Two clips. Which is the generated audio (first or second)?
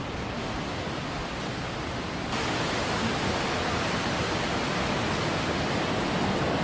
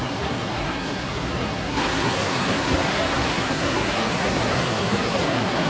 second